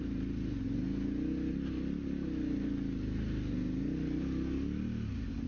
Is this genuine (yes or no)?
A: yes